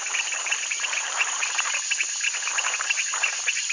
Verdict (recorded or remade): remade